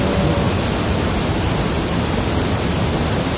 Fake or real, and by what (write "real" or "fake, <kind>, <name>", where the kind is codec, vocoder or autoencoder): real